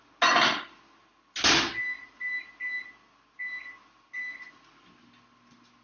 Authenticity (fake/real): real